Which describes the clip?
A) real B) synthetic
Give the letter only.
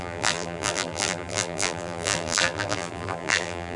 B